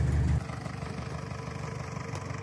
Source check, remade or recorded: recorded